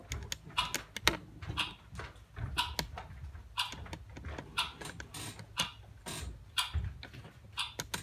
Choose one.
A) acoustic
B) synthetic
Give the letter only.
A